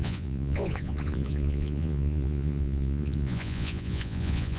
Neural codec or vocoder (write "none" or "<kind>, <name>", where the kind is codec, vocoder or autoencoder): vocoder, Vocos